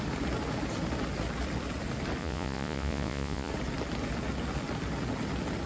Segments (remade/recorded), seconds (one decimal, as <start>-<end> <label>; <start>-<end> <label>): 0.0-2.2 recorded; 2.2-3.5 remade; 3.5-5.7 recorded